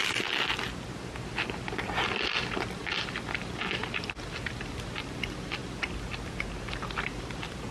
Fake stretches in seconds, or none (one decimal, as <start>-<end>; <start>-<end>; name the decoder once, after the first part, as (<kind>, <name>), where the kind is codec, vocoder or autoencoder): none

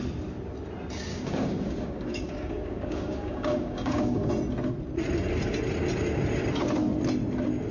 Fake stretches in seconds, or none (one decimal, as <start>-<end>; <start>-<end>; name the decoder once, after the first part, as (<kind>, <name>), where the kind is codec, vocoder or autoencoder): 1.1-4.3 (codec, DAC)

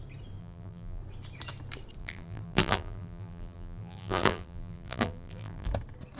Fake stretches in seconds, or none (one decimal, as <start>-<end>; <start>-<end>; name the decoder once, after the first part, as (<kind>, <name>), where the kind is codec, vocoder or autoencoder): 0.4-1.0 (vocoder, BigVGAN v2); 2.0-5.7

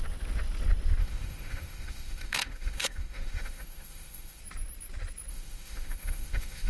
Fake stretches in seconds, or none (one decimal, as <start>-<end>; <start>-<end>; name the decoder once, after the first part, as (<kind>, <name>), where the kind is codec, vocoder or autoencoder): 1.0-4.4 (autoencoder, DAC-VAE); 5.3-6.7

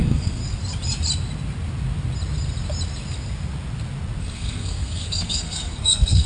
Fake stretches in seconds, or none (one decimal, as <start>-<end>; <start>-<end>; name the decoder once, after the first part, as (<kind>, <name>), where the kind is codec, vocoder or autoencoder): 0.0-0.4 (codec, SNAC); 4.2-6.3

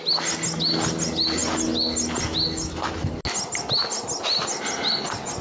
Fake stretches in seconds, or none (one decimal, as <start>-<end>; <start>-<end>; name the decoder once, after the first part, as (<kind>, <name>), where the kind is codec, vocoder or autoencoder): none